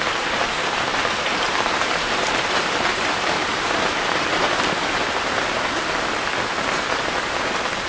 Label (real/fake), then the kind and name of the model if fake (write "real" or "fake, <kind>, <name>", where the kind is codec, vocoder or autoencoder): fake, vocoder, BigVGAN v2